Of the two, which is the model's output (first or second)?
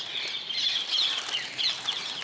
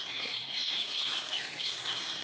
second